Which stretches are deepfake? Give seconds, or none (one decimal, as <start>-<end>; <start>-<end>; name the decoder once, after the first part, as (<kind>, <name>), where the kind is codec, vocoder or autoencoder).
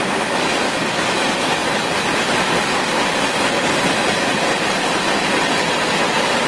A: none